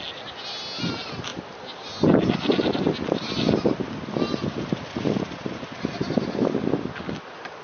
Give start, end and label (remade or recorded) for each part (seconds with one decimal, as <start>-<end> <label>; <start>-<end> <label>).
0.0-7.6 recorded